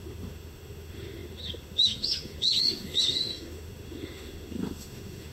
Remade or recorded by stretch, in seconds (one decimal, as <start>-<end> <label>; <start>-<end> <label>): 0.0-5.3 remade